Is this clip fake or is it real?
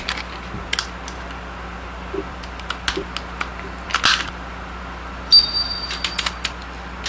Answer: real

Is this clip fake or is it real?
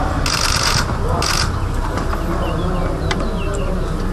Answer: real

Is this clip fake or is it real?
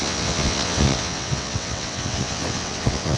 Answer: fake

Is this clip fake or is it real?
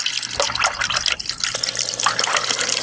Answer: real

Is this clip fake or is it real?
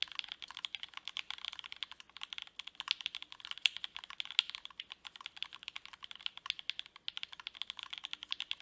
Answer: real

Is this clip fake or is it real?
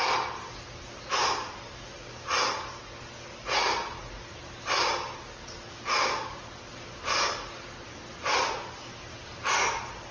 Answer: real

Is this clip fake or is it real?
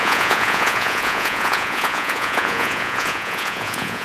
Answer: fake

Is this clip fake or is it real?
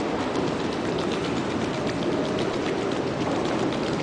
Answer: real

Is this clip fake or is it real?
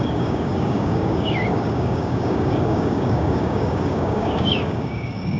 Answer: fake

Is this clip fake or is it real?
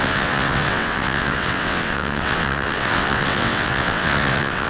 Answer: fake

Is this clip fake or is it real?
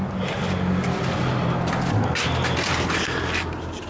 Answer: real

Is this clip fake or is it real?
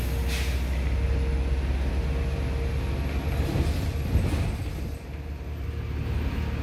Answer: real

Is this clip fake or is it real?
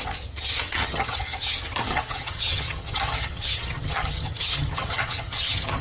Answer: fake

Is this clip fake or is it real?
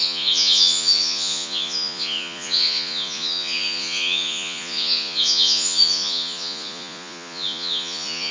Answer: fake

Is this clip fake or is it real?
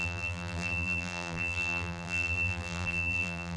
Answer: fake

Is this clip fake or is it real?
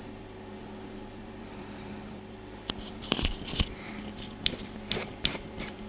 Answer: fake